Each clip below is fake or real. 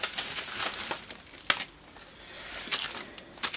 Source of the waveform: real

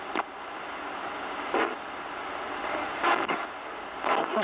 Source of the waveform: real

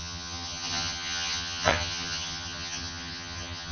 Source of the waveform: fake